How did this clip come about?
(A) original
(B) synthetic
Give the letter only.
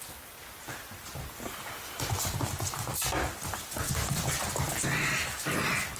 A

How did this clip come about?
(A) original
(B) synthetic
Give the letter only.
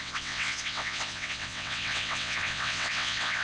B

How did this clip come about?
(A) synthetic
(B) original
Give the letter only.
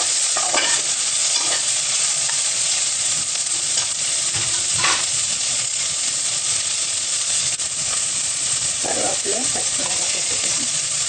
A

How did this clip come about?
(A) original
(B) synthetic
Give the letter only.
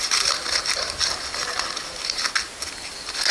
A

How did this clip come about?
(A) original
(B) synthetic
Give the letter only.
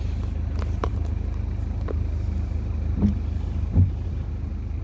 A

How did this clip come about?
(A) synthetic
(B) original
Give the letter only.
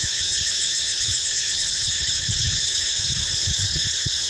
A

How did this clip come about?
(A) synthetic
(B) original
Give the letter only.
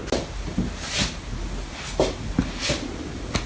B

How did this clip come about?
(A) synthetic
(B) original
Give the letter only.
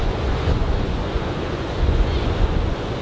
A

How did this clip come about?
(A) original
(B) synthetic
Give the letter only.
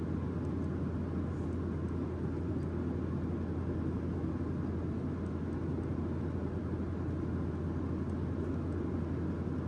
A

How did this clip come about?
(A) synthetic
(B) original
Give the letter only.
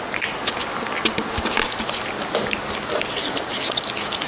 B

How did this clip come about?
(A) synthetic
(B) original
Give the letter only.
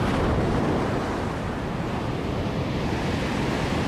B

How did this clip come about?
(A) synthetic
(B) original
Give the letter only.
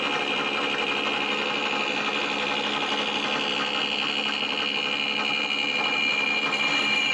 B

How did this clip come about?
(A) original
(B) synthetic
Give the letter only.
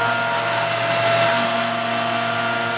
A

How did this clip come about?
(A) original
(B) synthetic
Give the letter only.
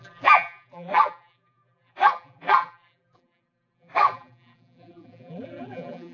B